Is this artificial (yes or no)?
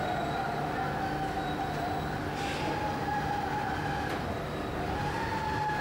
no